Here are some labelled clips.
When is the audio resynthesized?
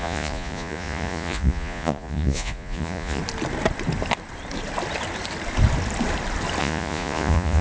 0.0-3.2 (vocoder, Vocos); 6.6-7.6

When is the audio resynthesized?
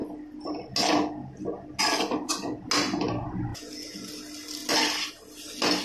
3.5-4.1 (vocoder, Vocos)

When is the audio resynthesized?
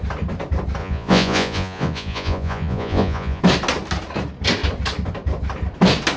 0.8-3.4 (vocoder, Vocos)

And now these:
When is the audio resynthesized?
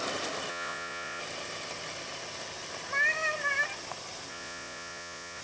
0.5-1.2 (vocoder, Vocos); 4.3-5.4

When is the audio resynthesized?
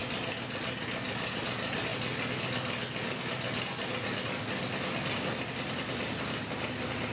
none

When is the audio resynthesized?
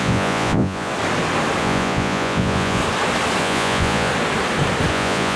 0.0-0.9 (vocoder, Vocos); 1.6-2.8; 3.4-4.1; 4.9-5.4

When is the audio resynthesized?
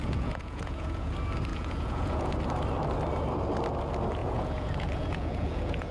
0.0-1.1 (vocoder, Vocos); 1.5-2.4; 4.2-5.9